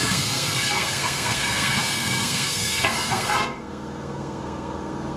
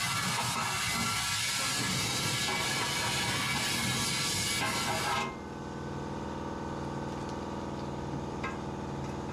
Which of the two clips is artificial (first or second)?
first